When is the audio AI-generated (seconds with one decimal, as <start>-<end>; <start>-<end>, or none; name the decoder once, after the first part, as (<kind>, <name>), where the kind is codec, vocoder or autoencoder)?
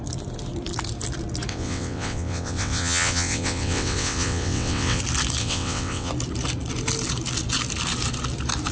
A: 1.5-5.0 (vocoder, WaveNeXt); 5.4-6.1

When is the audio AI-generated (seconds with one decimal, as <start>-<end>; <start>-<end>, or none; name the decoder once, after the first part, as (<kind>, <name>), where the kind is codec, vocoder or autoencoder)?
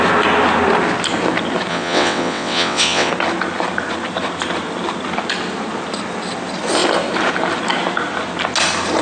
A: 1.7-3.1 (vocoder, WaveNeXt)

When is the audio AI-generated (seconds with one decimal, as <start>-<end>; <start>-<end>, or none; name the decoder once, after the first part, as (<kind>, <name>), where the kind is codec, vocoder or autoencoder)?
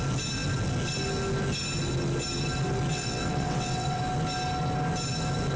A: 2.9-4.0 (vocoder, WaveNeXt)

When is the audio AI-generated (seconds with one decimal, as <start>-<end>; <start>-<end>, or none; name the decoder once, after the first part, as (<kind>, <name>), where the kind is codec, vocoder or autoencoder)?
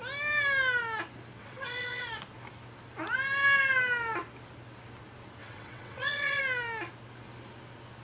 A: 1.4-2.1 (vocoder, WaveNeXt); 5.4-6.4